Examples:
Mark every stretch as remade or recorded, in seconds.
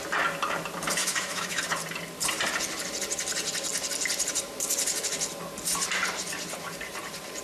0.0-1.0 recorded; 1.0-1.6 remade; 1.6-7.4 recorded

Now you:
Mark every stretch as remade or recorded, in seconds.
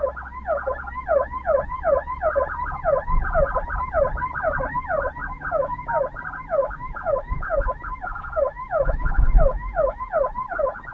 0.0-5.2 recorded; 5.2-5.9 remade; 5.9-6.6 recorded; 6.6-10.0 remade; 10.0-10.9 recorded